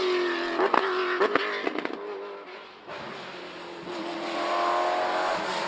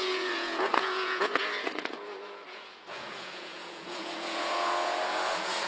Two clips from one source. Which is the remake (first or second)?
second